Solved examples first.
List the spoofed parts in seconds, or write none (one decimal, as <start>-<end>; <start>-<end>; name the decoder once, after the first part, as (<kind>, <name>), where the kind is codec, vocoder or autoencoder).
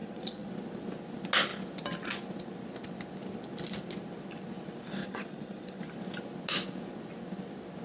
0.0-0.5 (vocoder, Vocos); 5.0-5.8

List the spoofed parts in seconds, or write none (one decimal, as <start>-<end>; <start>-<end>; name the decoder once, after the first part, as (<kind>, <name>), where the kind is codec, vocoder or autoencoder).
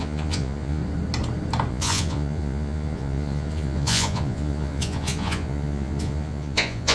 0.0-0.8 (vocoder, Vocos); 1.7-6.9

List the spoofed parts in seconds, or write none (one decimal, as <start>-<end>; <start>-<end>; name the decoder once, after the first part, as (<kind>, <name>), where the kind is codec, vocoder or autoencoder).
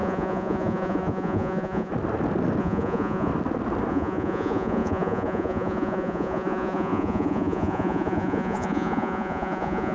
0.0-1.9 (vocoder, Vocos); 2.6-3.3; 3.9-9.9